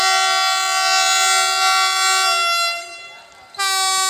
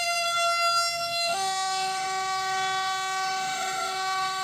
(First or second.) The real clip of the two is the first